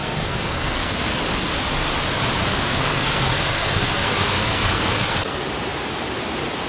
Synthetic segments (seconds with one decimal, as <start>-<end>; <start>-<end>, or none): 0.0-1.2; 2.5-5.5